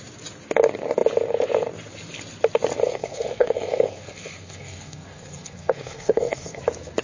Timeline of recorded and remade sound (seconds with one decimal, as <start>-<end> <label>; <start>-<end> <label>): 0.0-2.8 recorded; 2.8-6.6 remade; 6.6-7.0 recorded